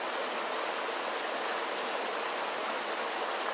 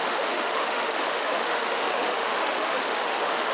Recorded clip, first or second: first